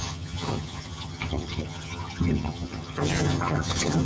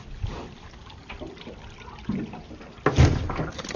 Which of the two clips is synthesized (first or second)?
first